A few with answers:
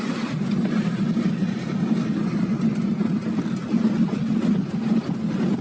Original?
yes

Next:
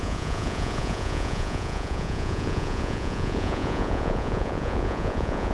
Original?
no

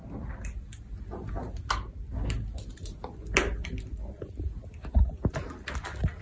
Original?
yes